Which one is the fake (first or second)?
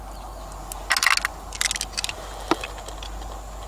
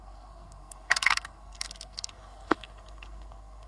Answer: second